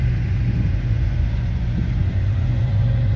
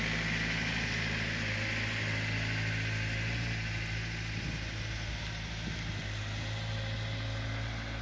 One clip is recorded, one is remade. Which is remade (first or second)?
first